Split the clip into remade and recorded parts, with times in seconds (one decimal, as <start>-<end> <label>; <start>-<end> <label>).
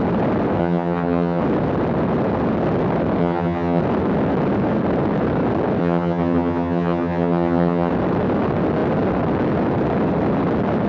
0.0-0.6 recorded; 0.6-1.4 remade; 1.4-3.2 recorded; 3.2-3.8 remade; 3.8-5.8 recorded; 5.8-7.9 remade; 7.9-10.9 recorded